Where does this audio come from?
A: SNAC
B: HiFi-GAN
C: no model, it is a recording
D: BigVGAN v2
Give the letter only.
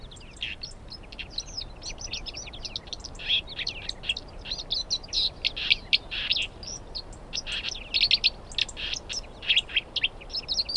C